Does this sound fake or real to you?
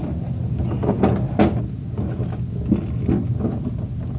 real